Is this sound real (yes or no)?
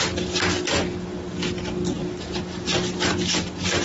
yes